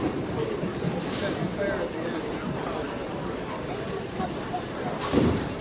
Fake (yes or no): yes